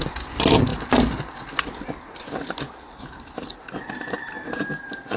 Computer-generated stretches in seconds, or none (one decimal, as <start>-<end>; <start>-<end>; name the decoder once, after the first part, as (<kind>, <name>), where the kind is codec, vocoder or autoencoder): none